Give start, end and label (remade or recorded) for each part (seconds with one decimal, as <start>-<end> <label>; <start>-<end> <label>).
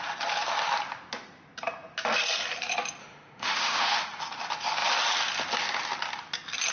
0.0-3.0 recorded; 3.0-4.0 remade; 4.0-6.7 recorded